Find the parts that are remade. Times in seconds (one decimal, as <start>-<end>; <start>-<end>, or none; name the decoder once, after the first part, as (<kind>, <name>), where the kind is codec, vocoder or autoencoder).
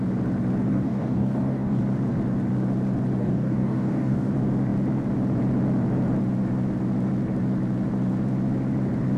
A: 0.7-1.8 (codec, DAC); 3.2-4.3